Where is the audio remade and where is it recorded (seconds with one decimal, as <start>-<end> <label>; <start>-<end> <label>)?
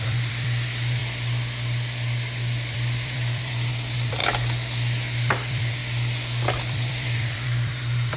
0.0-1.0 remade; 1.0-2.7 recorded; 2.7-4.2 remade; 4.2-5.3 recorded; 5.3-5.8 remade; 5.8-6.6 recorded; 6.6-8.2 remade